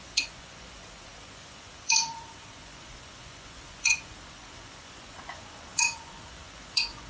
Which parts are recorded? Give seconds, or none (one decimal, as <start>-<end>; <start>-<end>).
none